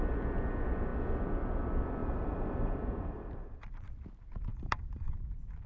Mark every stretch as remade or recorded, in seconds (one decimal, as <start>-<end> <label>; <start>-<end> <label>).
0.0-2.0 recorded; 2.0-3.7 remade; 3.7-4.5 recorded; 4.5-5.2 remade; 5.2-5.7 recorded